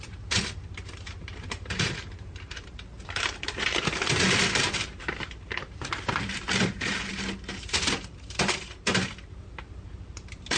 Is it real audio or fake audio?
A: fake